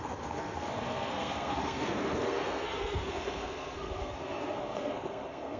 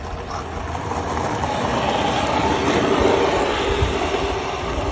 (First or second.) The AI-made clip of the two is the first